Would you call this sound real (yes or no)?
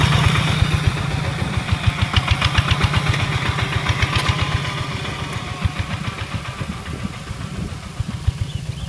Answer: yes